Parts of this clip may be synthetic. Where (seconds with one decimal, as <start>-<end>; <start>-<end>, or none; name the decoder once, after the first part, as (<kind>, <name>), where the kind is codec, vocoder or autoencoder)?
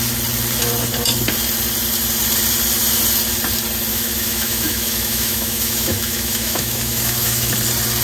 3.9-7.5 (autoencoder, DAC-VAE)